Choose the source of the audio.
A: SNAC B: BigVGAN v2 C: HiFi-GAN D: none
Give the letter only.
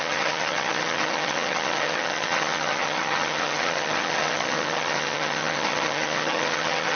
C